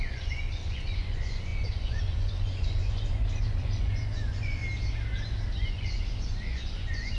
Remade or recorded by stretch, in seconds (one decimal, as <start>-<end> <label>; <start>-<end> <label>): 0.0-4.6 remade; 4.6-5.6 recorded; 5.6-7.2 remade